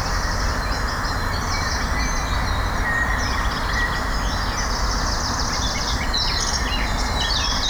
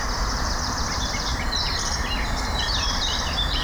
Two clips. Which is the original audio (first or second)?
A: first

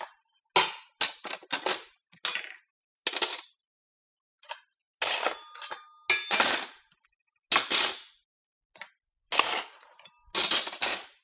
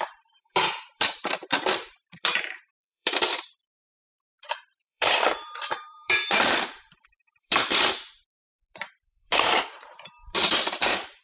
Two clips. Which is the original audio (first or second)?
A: first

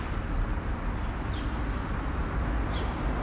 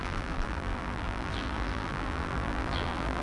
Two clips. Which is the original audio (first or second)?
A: first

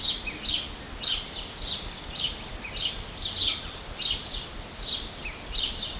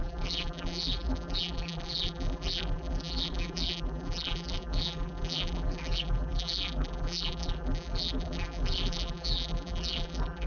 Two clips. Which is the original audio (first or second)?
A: first